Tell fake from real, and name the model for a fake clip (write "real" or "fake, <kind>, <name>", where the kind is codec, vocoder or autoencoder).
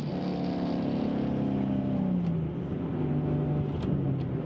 real